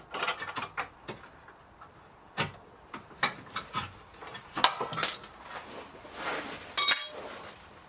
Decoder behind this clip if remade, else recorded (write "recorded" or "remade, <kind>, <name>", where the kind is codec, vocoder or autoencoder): recorded